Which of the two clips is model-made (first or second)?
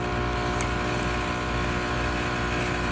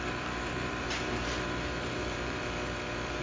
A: second